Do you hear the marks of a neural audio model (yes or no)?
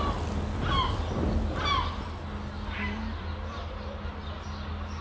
no